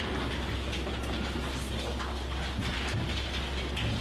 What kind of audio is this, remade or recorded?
recorded